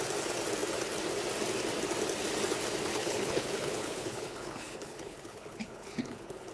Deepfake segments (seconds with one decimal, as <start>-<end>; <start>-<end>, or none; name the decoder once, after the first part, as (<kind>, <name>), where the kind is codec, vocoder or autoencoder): 2.9-6.5 (codec, HILCodec)